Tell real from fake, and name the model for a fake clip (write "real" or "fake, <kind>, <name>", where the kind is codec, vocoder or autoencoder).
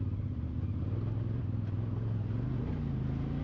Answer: real